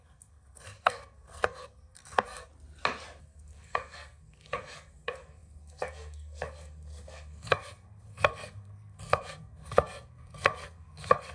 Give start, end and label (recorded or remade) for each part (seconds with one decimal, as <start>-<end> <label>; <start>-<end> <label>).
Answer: 0.0-2.5 remade; 2.5-3.2 recorded; 3.2-11.3 remade